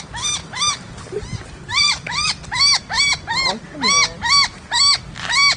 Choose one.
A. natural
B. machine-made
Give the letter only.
A